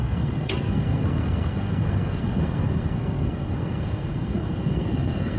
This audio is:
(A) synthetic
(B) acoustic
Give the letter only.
A